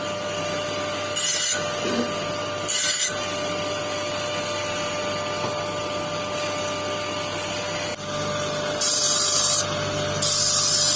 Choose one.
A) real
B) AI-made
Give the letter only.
A